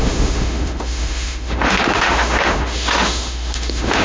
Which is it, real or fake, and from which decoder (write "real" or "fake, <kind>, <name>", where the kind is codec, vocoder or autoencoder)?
fake, autoencoder, DAC-VAE